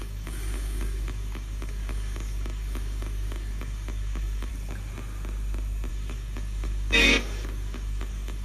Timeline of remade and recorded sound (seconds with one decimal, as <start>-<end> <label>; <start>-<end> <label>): 0.0-4.5 remade; 4.5-5.9 recorded; 5.9-8.4 remade